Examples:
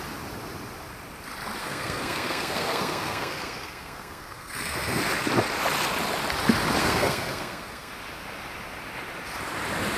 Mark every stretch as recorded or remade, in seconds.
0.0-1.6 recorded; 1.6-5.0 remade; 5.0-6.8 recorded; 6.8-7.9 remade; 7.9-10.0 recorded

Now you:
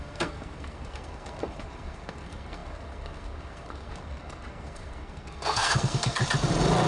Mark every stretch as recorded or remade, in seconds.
0.0-6.2 remade; 6.2-6.9 recorded

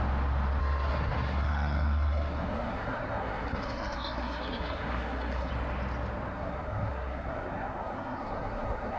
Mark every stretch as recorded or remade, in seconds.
0.0-0.6 recorded; 0.6-5.5 remade; 5.5-6.3 recorded; 6.3-9.0 remade

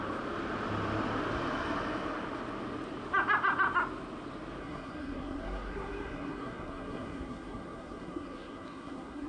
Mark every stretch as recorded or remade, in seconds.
0.0-4.6 recorded; 4.6-9.3 remade

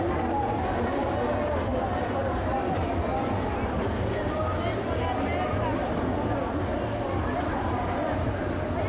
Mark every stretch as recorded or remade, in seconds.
0.0-8.9 recorded

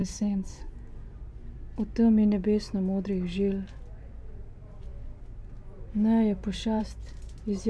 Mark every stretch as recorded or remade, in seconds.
0.0-0.7 remade; 0.7-7.7 recorded

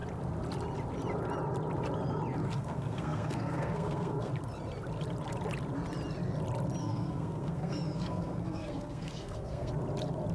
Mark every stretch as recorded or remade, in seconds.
0.0-2.4 recorded; 2.4-4.3 remade; 4.3-6.8 recorded; 6.8-9.7 remade; 9.7-10.3 recorded

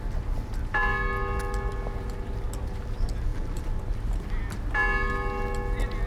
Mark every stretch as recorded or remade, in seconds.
0.0-6.1 recorded